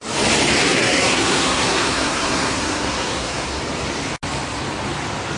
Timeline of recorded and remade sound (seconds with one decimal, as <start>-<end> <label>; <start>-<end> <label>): 0.0-0.6 recorded; 0.6-3.6 remade; 3.6-5.4 recorded